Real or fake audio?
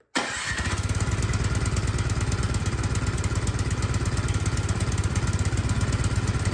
real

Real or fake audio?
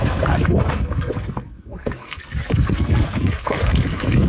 fake